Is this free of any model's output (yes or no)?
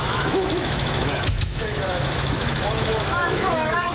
no